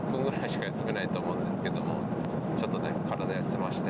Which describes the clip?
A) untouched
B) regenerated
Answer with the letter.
A